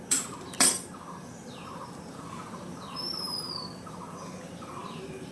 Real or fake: fake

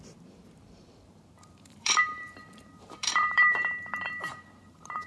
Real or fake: fake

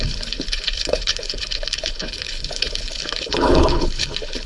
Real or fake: fake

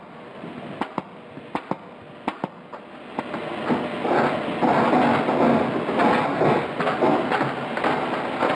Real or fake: real